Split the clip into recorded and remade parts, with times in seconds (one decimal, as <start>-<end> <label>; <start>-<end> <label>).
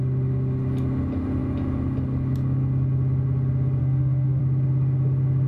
0.0-3.8 recorded; 3.8-4.4 remade; 4.4-5.5 recorded